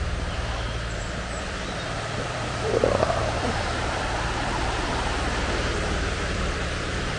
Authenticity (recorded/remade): remade